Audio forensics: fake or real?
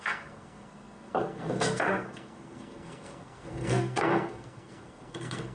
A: fake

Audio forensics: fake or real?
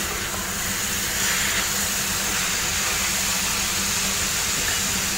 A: real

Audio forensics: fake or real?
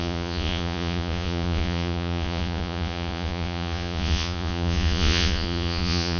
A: fake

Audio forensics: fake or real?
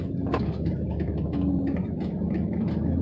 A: fake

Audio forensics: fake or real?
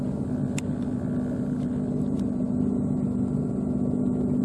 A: real